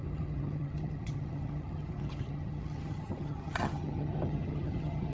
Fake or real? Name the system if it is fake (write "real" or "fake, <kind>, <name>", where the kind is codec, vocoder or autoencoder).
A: fake, vocoder, HiFi-GAN